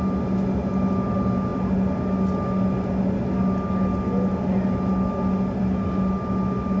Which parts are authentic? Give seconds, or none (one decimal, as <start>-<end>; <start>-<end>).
0.0-6.8